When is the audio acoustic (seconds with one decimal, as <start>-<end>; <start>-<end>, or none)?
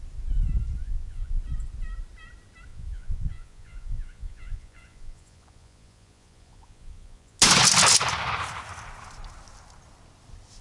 0.0-0.8; 1.4-2.7; 7.4-10.6